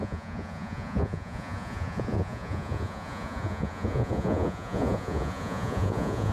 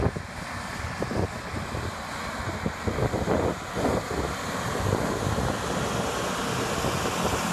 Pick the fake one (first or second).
first